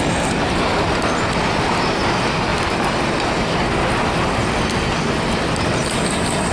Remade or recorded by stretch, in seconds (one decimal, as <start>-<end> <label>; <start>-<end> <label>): 0.0-6.5 recorded